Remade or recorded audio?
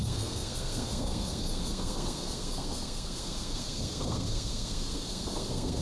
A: remade